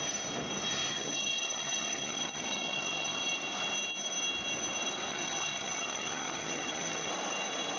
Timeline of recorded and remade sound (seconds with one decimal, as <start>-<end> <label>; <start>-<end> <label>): 0.0-0.9 recorded; 0.9-3.2 remade; 3.2-5.1 recorded; 5.1-7.1 remade; 7.1-7.8 recorded